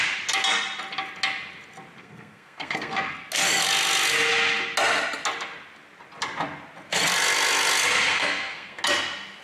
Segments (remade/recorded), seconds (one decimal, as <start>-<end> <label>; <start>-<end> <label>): 0.0-2.0 recorded; 2.0-3.1 remade; 3.1-8.1 recorded; 8.1-8.8 remade; 8.8-9.4 recorded

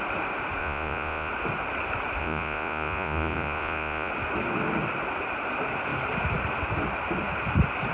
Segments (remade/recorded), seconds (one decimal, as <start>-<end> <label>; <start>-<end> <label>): 0.0-0.6 recorded; 0.6-1.3 remade; 1.3-2.2 recorded; 2.2-4.1 remade; 4.1-7.9 recorded

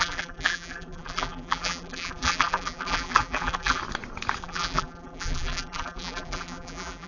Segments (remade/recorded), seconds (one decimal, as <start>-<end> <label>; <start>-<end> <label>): 0.0-3.8 remade; 3.8-4.4 recorded; 4.4-7.1 remade

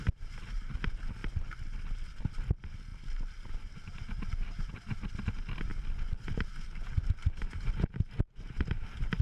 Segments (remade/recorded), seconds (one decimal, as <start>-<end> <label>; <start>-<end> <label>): 0.0-9.2 recorded

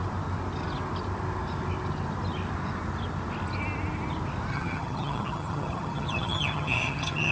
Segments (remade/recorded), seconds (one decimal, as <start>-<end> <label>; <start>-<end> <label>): 0.0-4.5 recorded; 4.5-7.3 remade

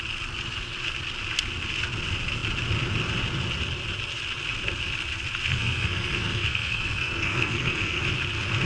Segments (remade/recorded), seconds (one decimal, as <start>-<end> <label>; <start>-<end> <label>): 0.0-5.5 recorded; 5.5-8.0 remade; 8.0-8.7 recorded

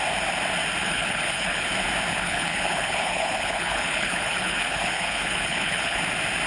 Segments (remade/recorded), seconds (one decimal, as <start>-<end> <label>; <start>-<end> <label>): 0.0-0.8 recorded; 0.8-1.7 remade; 1.7-2.1 recorded; 2.1-6.0 remade; 6.0-6.5 recorded